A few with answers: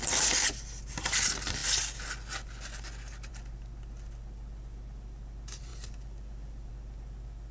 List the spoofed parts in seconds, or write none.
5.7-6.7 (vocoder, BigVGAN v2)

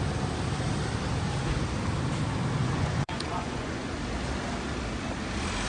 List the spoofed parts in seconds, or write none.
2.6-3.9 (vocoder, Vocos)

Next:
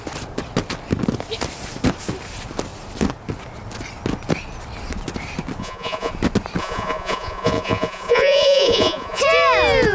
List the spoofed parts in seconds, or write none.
5.6-6.1 (vocoder, Vocos); 6.6-9.2

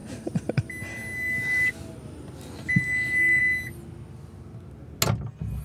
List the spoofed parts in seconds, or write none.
none

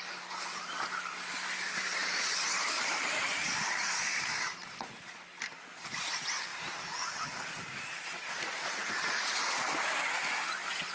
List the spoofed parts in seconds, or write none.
6.5-9.5 (vocoder, Vocos)

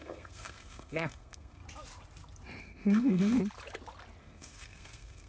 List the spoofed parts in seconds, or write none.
0.0-1.6 (codec, SNAC); 2.6-3.4; 4.2-5.3